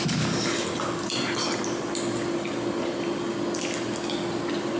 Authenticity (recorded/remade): recorded